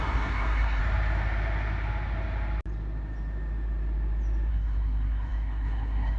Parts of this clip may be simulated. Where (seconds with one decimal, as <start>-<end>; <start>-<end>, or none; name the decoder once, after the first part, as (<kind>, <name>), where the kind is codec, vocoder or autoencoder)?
0.0-0.8 (codec, SNAC); 4.5-6.2

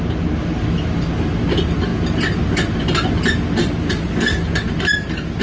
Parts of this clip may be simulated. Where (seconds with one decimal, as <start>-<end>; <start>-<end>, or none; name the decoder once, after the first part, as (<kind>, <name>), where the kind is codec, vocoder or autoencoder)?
none

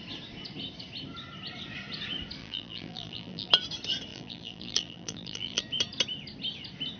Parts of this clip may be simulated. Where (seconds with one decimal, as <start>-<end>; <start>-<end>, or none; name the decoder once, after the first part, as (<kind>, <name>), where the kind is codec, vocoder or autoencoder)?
2.4-3.5 (vocoder, BigVGAN v2); 4.1-5.6

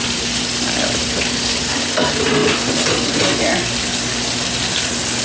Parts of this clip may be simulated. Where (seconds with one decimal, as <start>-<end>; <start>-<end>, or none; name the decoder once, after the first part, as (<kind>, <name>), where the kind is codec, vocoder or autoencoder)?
none

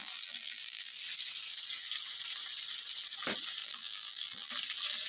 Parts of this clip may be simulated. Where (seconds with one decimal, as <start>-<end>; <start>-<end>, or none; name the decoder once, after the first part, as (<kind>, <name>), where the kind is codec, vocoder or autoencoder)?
0.0-1.0 (vocoder, BigVGAN v2); 3.6-4.5

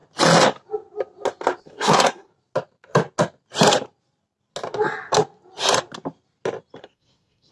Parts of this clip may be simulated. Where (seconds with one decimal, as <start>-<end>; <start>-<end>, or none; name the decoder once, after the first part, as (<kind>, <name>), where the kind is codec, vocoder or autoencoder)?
1.6-2.3 (codec, SNAC); 6.8-7.5